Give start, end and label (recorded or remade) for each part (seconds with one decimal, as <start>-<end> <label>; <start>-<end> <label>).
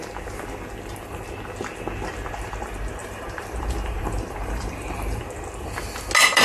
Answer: 0.0-3.0 recorded; 3.0-5.2 remade; 5.2-6.4 recorded